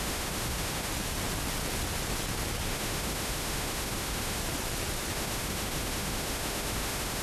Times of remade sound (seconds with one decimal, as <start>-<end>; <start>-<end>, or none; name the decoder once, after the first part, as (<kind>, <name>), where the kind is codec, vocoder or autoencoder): 0.0-0.9 (autoencoder, DAC-VAE); 2.7-4.4; 5.1-7.2